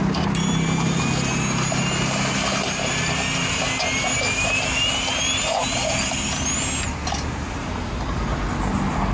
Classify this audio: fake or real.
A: real